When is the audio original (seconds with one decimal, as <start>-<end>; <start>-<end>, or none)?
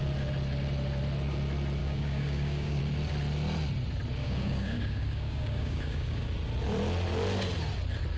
0.0-1.8; 2.8-4.2; 6.2-8.2